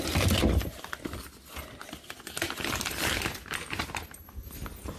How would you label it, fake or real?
real